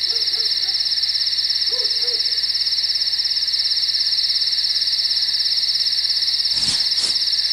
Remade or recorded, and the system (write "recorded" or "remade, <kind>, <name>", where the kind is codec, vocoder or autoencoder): recorded